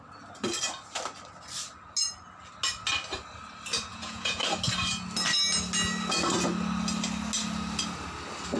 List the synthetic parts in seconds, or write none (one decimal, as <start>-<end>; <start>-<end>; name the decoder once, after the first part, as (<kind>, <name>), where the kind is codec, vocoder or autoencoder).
3.9-4.4 (vocoder, Vocos)

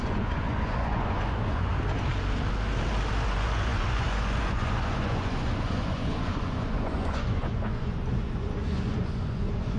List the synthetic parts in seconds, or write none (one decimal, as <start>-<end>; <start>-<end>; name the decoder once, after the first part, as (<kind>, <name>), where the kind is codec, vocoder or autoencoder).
0.0-1.7 (vocoder, Vocos); 3.3-9.8